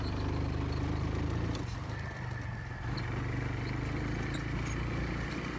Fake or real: real